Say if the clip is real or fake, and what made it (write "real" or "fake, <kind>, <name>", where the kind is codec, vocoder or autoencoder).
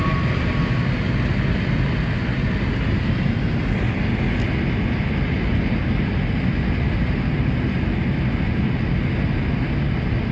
real